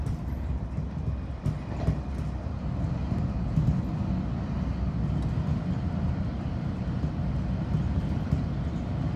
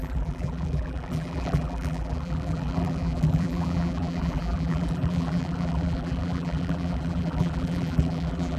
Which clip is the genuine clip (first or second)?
first